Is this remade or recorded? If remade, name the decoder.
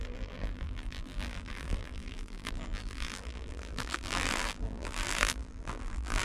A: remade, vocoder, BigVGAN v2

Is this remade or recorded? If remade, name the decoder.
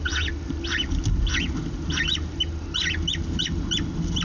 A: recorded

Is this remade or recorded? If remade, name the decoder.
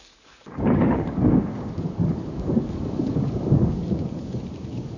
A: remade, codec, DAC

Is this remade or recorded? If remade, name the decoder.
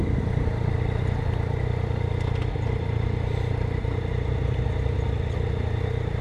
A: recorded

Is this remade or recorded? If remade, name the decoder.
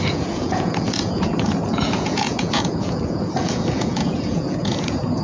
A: remade, vocoder, Vocos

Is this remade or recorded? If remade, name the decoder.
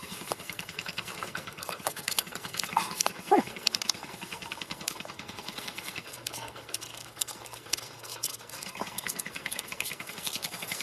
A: remade, codec, SNAC